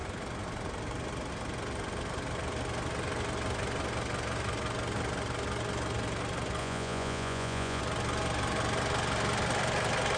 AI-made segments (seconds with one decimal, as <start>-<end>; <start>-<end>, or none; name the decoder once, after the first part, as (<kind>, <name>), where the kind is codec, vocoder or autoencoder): 6.6-7.8 (vocoder, Vocos)